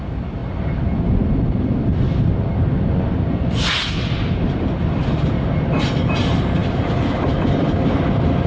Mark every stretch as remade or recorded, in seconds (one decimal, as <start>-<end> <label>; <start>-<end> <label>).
0.0-8.5 recorded